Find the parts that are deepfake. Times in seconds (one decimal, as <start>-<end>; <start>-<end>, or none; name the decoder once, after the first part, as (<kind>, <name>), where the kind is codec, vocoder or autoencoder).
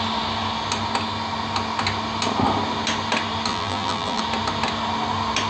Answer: 3.5-4.2 (vocoder, BigVGAN v2)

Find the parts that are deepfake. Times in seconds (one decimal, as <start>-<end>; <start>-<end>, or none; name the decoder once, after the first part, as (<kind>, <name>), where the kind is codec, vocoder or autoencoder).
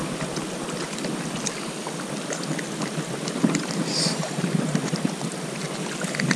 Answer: none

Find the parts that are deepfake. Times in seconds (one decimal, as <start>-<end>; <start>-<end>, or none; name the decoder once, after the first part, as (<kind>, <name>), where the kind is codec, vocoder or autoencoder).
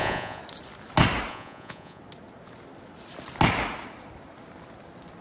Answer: 0.0-0.4 (vocoder, Vocos); 1.3-2.0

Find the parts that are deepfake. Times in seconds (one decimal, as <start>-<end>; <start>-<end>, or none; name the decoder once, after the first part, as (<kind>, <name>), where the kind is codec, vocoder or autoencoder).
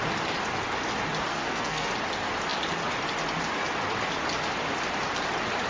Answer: 1.3-1.9 (codec, SNAC)